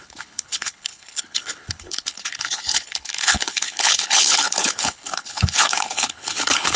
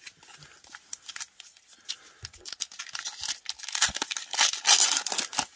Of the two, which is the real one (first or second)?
second